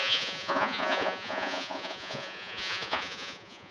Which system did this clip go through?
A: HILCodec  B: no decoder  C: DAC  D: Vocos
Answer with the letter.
D